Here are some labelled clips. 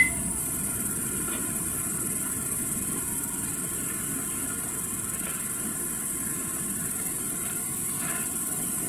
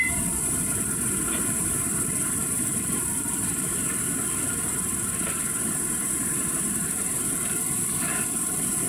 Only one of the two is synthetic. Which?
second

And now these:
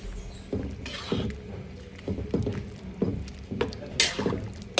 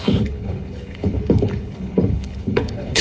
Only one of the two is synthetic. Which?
second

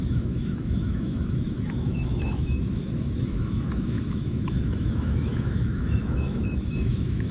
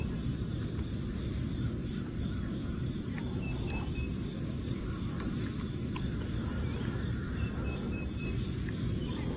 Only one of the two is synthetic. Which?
first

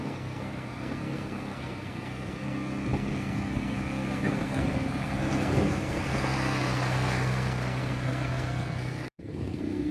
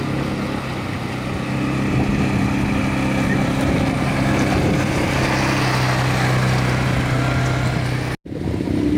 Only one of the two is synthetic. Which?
first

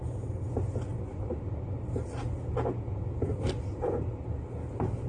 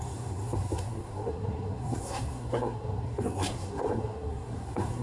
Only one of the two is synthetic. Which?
second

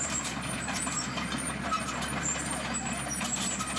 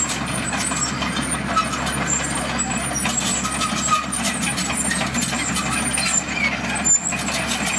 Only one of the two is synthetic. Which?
first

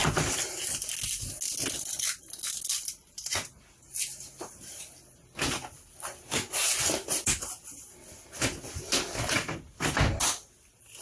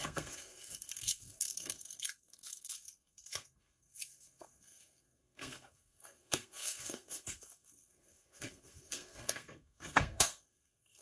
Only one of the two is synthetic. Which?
second